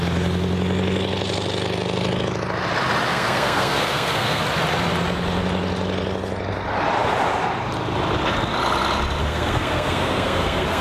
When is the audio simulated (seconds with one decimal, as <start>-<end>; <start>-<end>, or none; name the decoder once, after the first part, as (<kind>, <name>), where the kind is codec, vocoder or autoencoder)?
3.1-4.4 (codec, SNAC); 9.2-10.8